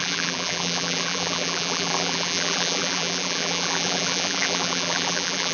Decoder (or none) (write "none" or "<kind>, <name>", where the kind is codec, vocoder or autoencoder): vocoder, BigVGAN v2